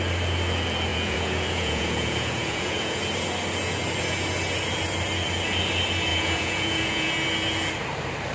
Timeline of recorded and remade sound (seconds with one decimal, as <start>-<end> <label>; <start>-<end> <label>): 0.0-0.9 recorded; 0.9-3.0 remade; 3.0-6.1 recorded; 6.1-7.1 remade; 7.1-8.3 recorded